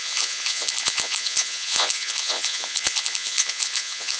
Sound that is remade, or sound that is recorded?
remade